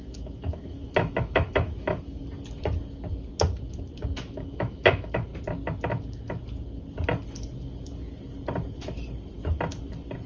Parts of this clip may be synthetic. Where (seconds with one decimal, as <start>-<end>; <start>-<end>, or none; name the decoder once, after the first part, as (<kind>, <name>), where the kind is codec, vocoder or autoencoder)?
0.0-2.2 (autoencoder, DAC-VAE); 4.2-5.3